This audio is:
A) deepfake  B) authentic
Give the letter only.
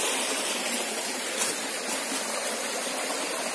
B